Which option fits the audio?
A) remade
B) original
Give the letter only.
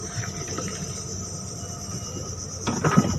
B